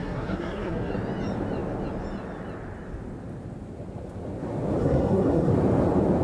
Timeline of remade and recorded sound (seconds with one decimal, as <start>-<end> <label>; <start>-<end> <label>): 0.0-0.9 remade; 0.9-4.8 recorded; 4.8-5.5 remade; 5.5-6.2 recorded